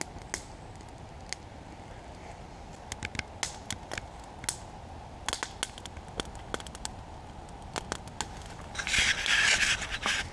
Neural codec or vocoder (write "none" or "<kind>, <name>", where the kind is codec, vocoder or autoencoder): none